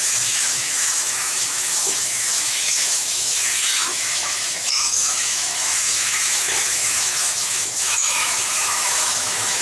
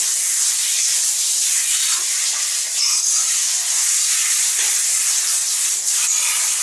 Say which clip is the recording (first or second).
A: second